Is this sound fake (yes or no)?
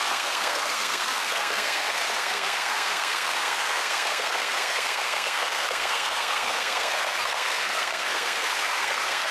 yes